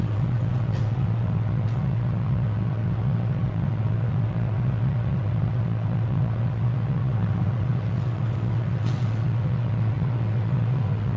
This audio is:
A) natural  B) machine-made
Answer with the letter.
B